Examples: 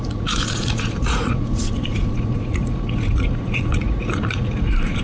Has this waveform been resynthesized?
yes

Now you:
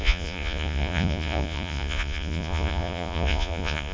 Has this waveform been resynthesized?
yes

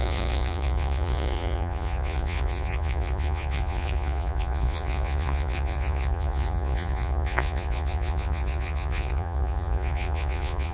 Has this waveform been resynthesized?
yes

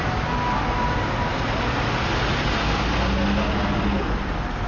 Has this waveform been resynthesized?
no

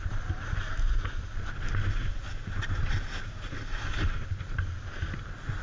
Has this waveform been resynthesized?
no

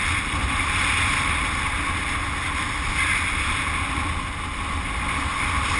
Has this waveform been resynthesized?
no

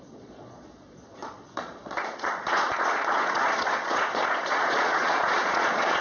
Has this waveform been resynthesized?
yes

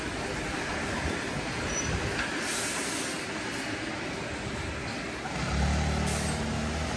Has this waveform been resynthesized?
no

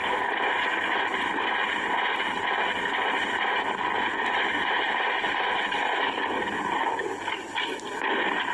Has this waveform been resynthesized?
no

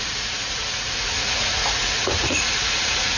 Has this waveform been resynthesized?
yes